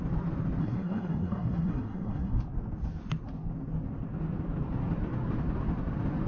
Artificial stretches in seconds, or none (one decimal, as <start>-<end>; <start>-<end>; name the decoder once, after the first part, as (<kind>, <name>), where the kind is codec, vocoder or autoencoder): 0.6-2.4 (codec, SNAC)